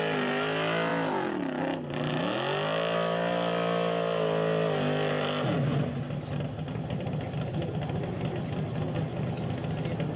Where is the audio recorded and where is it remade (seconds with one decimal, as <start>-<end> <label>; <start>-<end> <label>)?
0.0-10.2 recorded